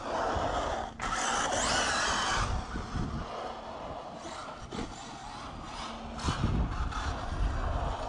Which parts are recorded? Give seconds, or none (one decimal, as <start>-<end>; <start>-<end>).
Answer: 0.0-8.1